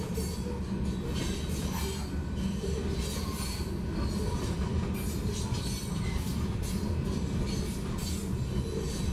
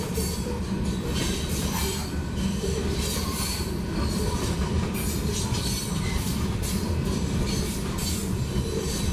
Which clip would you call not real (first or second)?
second